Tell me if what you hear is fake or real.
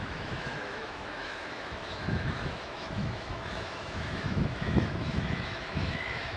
fake